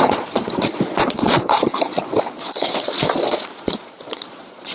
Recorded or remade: remade